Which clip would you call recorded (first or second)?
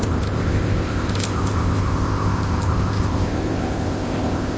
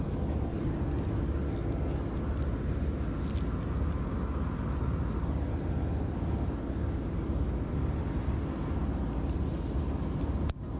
second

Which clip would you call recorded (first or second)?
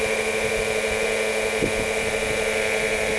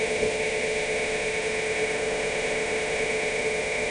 first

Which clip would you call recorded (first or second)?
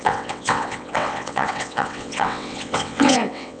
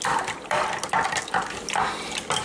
second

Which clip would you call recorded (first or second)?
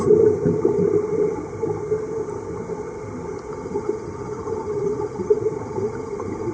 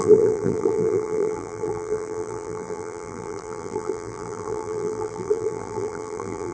first